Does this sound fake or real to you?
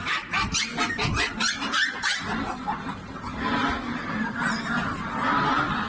real